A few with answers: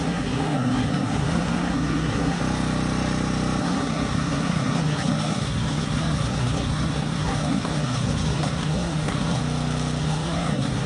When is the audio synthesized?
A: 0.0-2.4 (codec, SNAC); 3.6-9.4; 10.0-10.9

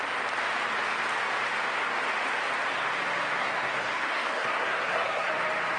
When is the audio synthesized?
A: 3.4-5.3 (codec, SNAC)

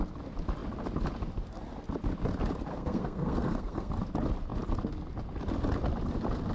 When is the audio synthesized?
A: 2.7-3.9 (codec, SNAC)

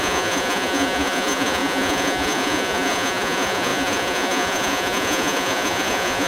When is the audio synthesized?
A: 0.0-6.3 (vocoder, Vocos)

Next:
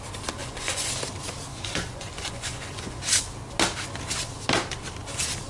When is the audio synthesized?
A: 0.4-0.9 (vocoder, Vocos); 1.5-3.0